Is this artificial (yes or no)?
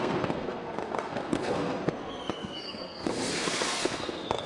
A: yes